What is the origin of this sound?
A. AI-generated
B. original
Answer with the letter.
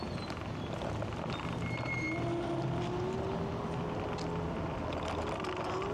B